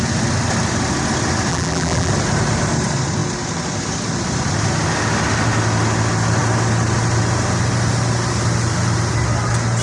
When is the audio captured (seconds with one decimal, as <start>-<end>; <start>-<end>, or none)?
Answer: 0.0-1.5; 2.1-9.8